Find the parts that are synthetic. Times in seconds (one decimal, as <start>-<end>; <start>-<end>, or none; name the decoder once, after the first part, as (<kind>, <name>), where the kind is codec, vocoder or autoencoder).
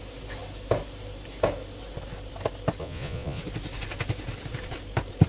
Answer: 2.8-3.4 (vocoder, Vocos)